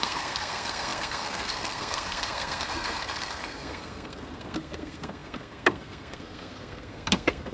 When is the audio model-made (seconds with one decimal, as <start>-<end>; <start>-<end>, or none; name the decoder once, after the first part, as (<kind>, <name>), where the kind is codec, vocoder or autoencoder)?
0.0-7.5 (codec, SNAC)